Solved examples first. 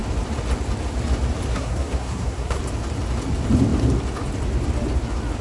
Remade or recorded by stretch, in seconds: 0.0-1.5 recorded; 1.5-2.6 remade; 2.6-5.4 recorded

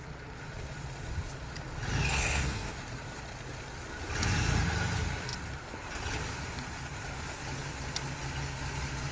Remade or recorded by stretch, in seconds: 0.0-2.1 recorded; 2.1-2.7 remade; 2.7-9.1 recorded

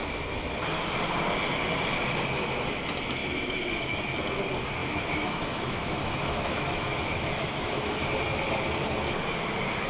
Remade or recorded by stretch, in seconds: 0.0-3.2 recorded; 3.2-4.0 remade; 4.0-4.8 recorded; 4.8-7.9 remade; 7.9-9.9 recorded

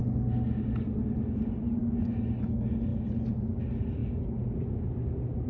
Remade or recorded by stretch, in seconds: 0.0-5.5 recorded